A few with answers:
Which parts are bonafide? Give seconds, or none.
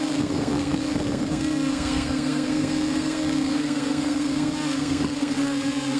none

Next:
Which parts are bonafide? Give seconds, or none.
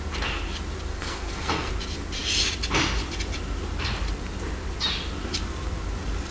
0.0-0.9; 1.7-6.3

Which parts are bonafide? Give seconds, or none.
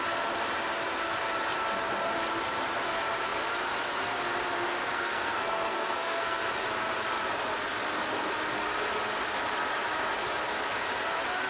0.0-4.8; 6.5-11.5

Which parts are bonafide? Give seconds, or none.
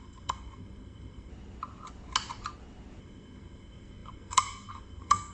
1.3-3.0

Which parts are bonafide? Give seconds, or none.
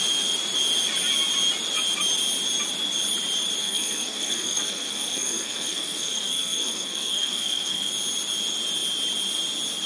0.0-3.6; 7.9-9.9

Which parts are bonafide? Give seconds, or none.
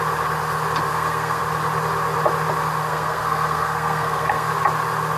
0.0-0.9; 1.4-2.8; 4.5-5.2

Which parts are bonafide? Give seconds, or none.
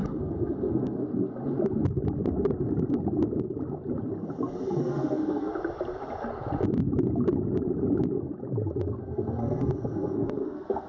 1.0-4.8; 5.5-9.0